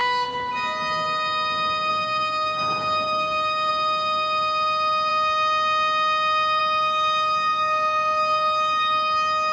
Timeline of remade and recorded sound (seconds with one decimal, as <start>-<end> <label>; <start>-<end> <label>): 0.0-0.5 remade; 0.5-1.9 recorded; 1.9-3.7 remade; 3.7-9.5 recorded